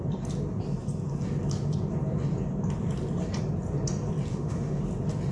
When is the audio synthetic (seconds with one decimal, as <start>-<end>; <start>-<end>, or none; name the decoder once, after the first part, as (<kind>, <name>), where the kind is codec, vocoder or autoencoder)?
4.3-4.8 (autoencoder, DAC-VAE)